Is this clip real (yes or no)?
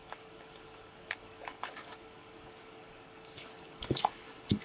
no